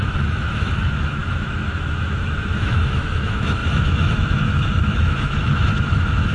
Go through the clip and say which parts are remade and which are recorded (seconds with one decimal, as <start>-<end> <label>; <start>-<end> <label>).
0.0-6.3 remade